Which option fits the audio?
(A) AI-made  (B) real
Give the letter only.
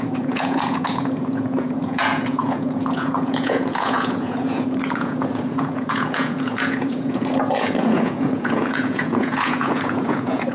A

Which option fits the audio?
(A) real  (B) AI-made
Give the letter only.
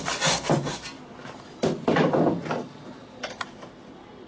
A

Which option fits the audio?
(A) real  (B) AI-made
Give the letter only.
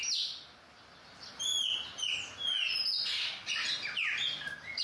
A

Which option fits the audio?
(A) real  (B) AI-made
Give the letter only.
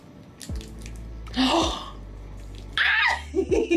A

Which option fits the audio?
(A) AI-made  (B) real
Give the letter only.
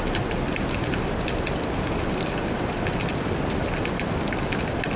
B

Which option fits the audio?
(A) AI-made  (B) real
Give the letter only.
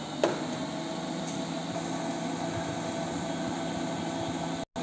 B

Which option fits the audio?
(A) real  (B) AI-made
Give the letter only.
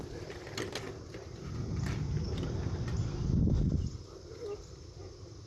A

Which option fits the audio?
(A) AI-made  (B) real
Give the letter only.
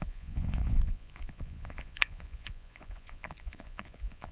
A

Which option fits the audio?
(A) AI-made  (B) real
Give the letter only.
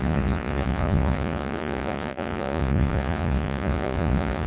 A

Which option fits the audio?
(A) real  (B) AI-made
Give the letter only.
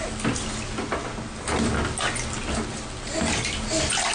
A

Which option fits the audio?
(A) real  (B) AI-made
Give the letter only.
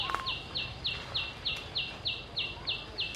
A